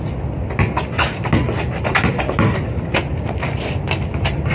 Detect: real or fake real